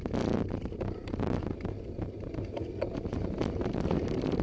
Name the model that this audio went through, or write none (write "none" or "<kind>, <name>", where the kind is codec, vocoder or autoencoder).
vocoder, BigVGAN v2